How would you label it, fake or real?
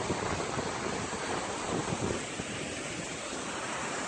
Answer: real